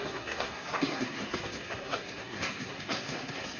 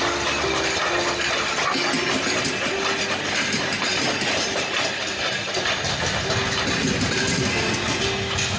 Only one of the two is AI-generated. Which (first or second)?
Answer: first